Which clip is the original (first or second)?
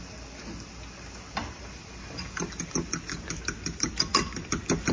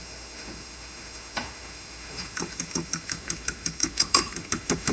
first